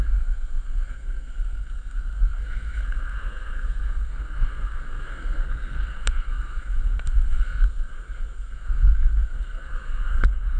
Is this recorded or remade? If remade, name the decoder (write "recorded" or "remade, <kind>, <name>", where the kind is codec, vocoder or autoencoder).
remade, codec, SNAC